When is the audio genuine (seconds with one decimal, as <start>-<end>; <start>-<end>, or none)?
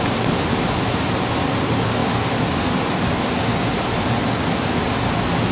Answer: 0.0-5.5